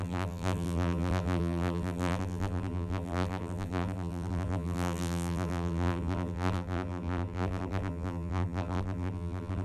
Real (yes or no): no